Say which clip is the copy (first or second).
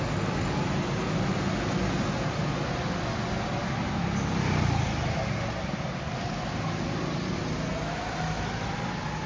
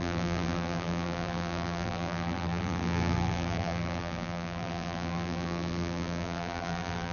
second